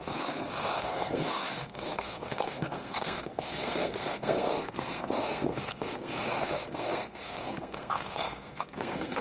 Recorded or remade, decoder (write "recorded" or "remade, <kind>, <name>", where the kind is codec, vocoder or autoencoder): remade, codec, SNAC